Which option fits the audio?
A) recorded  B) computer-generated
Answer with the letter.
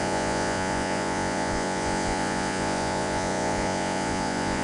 B